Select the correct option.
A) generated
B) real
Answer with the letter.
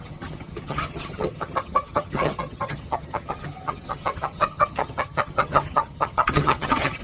A